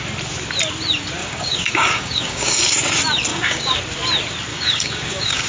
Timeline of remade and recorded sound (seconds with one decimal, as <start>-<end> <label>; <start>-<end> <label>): 0.0-1.2 recorded; 1.2-2.6 remade; 2.6-3.3 recorded; 3.3-3.8 remade; 3.8-4.5 recorded; 4.5-5.5 remade